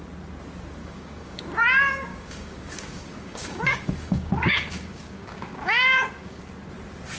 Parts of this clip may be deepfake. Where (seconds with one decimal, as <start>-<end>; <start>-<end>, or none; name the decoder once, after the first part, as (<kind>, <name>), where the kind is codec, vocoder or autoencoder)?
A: 0.8-1.4 (codec, DAC); 2.1-6.4